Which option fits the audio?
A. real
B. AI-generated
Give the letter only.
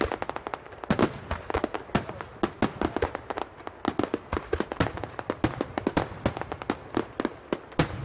A